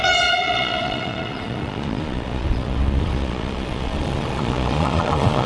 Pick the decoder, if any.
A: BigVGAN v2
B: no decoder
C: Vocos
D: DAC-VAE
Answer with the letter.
C